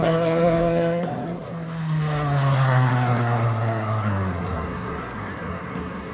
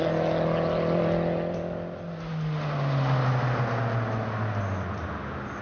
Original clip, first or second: second